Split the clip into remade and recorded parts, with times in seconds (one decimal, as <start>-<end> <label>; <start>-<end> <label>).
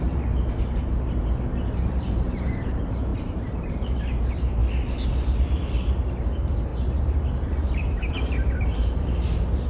0.0-0.8 remade; 0.8-2.0 recorded; 2.0-4.6 remade; 4.6-5.5 recorded; 5.5-6.7 remade; 6.7-7.3 recorded; 7.3-9.7 remade